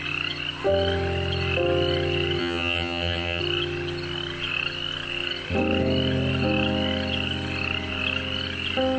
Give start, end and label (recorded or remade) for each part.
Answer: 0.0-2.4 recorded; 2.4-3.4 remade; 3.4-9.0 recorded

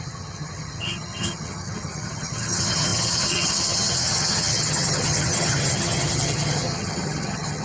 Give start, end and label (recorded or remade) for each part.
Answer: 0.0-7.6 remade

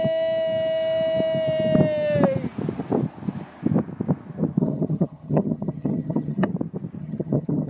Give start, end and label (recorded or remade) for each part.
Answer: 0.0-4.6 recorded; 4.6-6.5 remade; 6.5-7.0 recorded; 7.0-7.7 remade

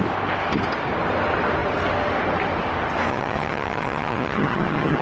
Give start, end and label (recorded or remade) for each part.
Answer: 0.0-3.1 recorded; 3.1-5.0 remade